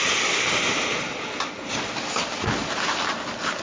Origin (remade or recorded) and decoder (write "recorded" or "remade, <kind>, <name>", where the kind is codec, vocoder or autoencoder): recorded